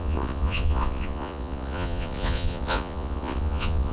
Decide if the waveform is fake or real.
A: fake